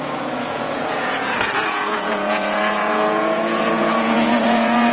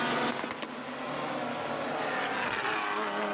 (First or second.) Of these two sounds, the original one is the second